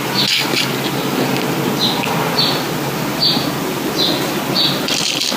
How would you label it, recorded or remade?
recorded